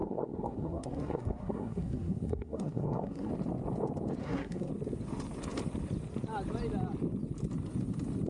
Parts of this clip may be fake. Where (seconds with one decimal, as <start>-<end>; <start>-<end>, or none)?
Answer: 0.0-3.3; 4.2-4.7